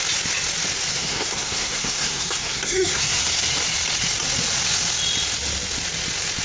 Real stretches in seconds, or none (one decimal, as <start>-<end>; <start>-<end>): 0.0-0.9; 3.2-6.4